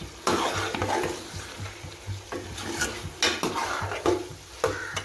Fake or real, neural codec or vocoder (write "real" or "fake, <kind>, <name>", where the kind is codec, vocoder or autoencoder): real